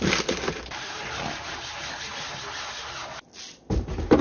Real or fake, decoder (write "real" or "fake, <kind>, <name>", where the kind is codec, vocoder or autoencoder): real